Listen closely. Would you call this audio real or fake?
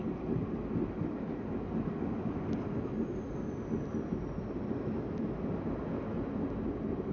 real